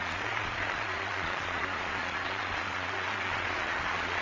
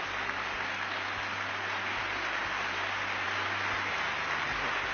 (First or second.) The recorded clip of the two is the second